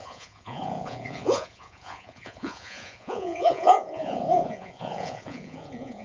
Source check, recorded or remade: remade